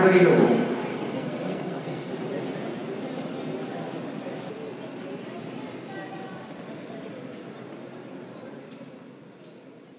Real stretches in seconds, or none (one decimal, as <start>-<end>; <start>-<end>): 0.0-0.9; 2.1-10.0